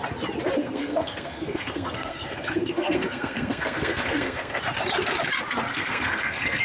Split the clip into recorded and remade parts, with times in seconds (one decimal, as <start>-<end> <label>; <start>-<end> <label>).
0.0-0.6 recorded; 0.6-4.6 remade; 4.6-5.7 recorded; 5.7-6.6 remade